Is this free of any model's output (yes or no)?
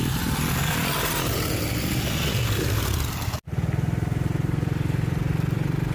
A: yes